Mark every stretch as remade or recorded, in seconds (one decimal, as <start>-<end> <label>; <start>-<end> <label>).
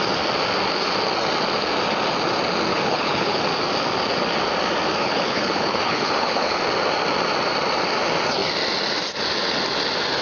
0.0-2.7 recorded; 2.7-3.4 remade; 3.4-5.0 recorded; 5.0-6.6 remade; 6.6-10.2 recorded